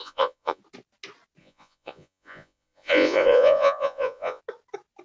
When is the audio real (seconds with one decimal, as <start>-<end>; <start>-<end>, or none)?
0.6-1.4; 4.4-5.0